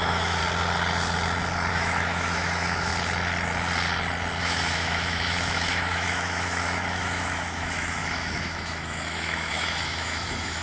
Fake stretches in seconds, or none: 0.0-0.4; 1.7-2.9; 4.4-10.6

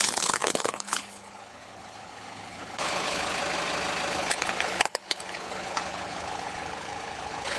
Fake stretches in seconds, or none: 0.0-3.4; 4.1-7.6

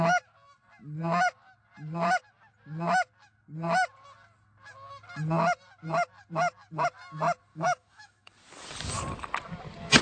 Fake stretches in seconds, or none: 7.5-8.3

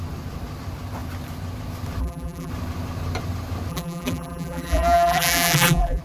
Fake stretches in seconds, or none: 2.0-2.5; 3.7-6.0

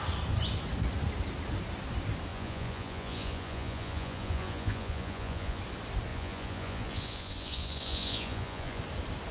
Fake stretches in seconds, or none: 2.3-5.6; 6.1-8.8

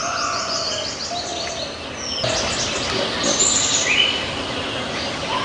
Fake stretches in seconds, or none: 0.0-0.7